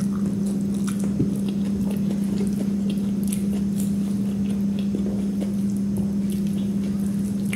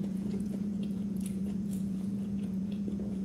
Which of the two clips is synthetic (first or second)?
second